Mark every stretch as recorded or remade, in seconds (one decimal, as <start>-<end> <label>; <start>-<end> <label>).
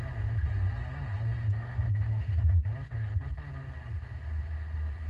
0.0-1.4 recorded; 1.4-2.7 remade; 2.7-5.1 recorded